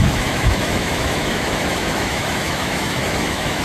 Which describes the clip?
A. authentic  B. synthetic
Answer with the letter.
B